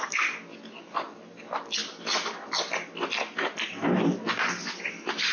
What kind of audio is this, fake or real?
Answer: real